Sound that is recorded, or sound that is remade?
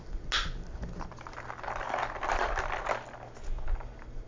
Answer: recorded